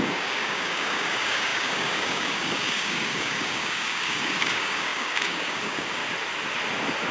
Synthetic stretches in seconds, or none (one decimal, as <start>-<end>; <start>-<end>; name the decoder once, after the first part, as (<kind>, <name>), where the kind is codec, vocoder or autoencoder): 0.0-6.0 (codec, DAC)